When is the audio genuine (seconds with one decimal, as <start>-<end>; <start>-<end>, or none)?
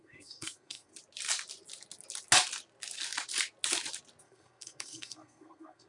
0.9-4.2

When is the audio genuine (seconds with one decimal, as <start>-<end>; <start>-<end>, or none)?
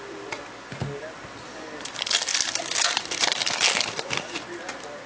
0.0-5.1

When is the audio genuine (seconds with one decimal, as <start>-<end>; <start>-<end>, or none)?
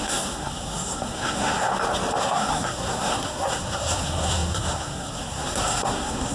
1.7-2.2